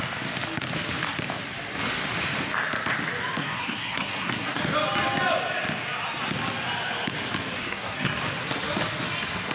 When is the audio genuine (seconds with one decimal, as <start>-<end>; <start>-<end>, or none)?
0.0-3.4; 4.6-7.6; 8.2-9.5